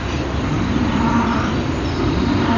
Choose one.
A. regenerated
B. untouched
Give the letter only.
B